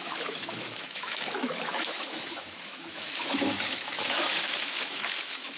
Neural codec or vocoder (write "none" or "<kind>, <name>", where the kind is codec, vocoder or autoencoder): autoencoder, DAC-VAE